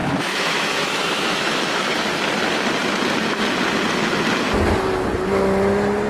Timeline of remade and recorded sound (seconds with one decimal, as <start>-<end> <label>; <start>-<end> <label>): 0.0-2.0 remade; 2.0-6.1 recorded